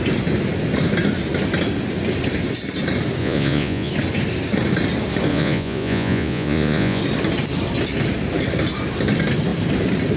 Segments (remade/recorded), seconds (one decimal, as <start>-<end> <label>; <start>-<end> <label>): 0.0-3.2 recorded; 3.2-3.9 remade; 3.9-5.3 recorded; 5.3-7.0 remade; 7.0-10.2 recorded